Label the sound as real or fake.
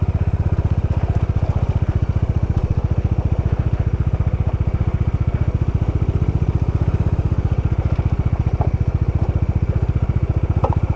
real